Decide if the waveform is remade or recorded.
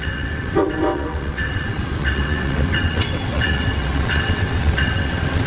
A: remade